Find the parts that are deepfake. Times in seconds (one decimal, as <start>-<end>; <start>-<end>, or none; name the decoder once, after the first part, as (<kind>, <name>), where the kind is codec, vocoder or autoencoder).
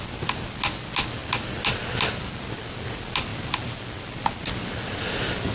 none